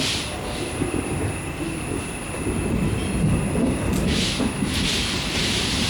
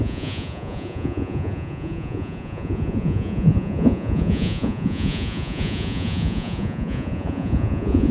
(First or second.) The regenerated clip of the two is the second